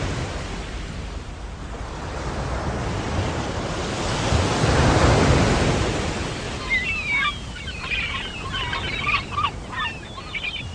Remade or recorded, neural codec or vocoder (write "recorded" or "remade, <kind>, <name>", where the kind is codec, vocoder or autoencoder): recorded